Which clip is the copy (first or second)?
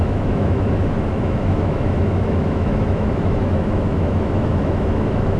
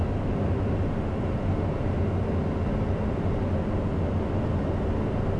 first